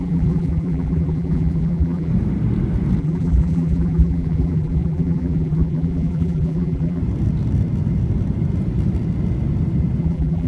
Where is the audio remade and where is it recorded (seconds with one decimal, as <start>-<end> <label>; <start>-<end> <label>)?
0.0-2.1 remade; 2.1-3.0 recorded; 3.0-7.0 remade; 7.0-10.0 recorded; 10.0-10.5 remade